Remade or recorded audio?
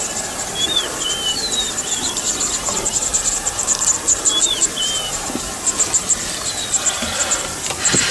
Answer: recorded